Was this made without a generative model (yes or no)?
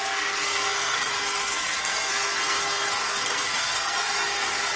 no